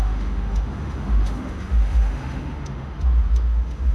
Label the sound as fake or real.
fake